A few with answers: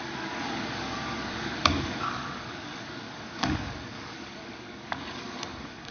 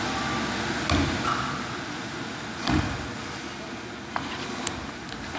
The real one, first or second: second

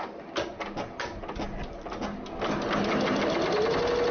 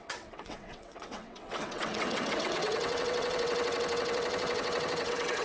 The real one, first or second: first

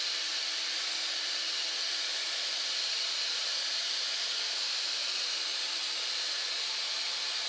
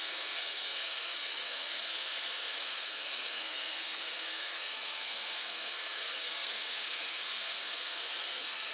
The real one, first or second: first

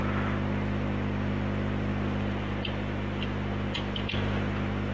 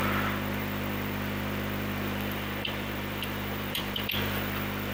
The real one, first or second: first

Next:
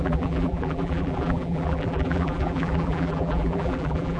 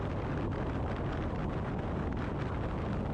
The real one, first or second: second